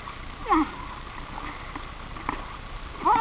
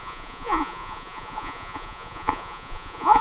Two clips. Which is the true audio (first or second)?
first